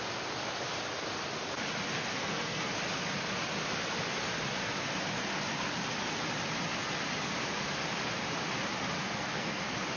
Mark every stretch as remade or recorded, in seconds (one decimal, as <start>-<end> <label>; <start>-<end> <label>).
0.0-2.1 recorded; 2.1-2.7 remade; 2.7-9.0 recorded; 9.0-9.6 remade; 9.6-10.0 recorded